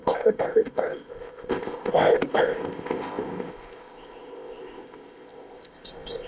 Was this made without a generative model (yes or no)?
no